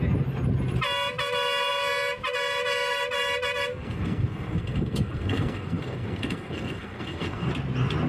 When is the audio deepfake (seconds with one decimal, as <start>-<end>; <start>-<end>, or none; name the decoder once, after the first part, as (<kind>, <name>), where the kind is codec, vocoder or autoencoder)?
3.7-7.5 (codec, SNAC)